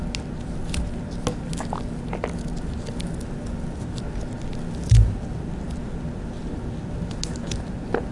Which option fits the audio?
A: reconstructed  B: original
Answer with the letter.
B